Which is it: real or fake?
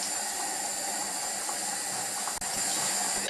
real